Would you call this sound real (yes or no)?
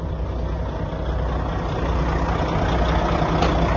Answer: yes